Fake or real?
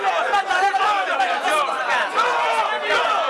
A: real